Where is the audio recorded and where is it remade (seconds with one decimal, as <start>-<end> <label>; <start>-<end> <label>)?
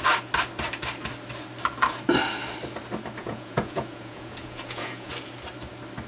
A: 0.0-3.2 recorded; 3.2-5.1 remade; 5.1-6.1 recorded